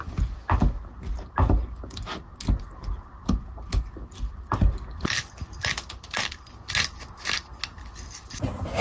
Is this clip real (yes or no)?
yes